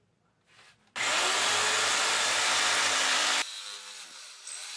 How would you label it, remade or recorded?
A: recorded